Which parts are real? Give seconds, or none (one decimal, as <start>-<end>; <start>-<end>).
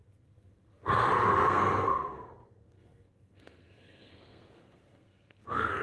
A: none